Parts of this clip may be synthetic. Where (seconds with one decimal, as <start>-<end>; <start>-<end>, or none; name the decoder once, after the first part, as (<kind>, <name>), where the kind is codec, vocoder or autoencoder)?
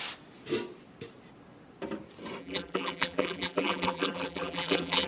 2.4-5.1 (vocoder, BigVGAN v2)